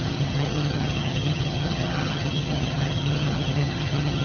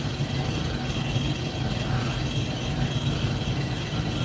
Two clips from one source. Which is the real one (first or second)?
second